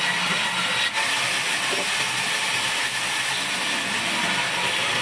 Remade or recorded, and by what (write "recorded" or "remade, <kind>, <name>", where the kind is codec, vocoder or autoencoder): recorded